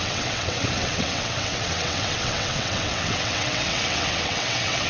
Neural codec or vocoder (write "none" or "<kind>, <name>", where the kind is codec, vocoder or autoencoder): vocoder, WaveNeXt